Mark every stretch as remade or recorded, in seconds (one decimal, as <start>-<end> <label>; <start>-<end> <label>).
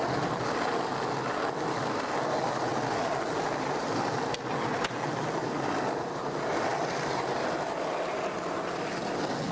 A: 0.0-9.5 recorded